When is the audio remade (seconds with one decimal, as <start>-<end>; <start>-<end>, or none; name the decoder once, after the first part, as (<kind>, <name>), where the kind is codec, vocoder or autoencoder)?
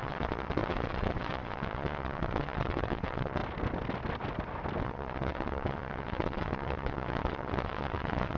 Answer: 0.0-3.4 (vocoder, WaveNeXt); 4.8-8.4